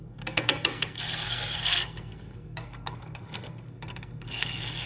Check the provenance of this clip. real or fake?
fake